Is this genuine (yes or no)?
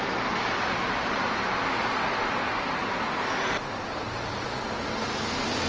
yes